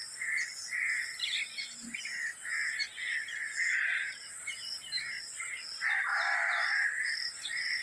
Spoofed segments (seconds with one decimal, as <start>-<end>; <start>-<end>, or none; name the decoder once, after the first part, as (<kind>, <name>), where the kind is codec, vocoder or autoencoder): 3.6-7.8 (vocoder, BigVGAN v2)